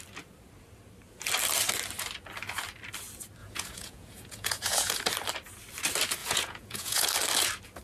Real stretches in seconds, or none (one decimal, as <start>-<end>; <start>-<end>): 0.0-3.4; 4.9-6.2; 7.1-7.8